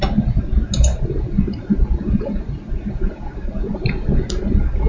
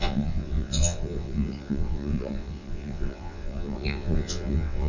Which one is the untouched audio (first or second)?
first